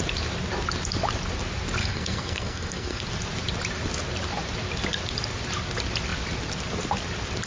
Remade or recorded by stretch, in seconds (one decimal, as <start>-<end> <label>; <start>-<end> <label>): 0.0-1.8 recorded; 1.8-3.0 remade; 3.0-7.5 recorded